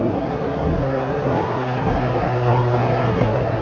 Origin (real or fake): fake